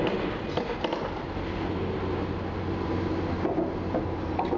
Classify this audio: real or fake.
real